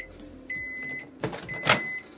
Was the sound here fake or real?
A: real